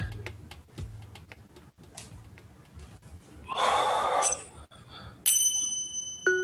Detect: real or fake real